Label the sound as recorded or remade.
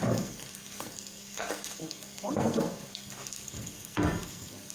remade